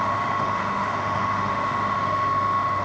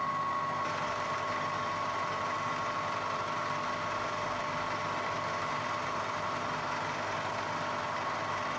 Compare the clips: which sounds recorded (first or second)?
second